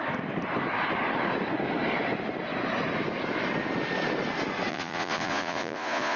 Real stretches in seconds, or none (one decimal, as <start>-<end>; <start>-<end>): 0.0-4.7

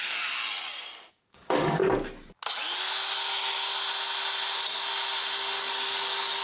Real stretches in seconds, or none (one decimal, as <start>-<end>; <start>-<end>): 0.4-1.1; 1.8-5.6

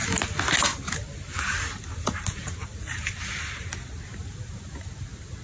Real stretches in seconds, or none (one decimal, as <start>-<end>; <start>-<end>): 0.0-0.7; 3.5-4.1; 4.9-5.4

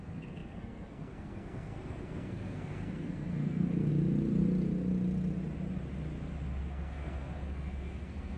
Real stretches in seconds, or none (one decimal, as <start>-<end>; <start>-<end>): 3.9-6.6

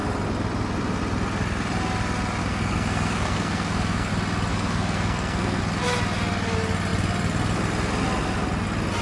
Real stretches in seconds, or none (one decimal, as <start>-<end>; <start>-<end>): 0.0-2.4; 4.1-4.5; 5.6-9.0

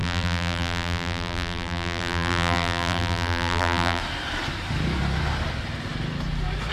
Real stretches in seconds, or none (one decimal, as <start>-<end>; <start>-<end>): 4.0-6.7

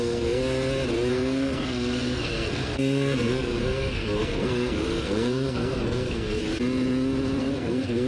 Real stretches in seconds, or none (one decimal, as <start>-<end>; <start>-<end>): 0.4-1.1; 6.4-7.4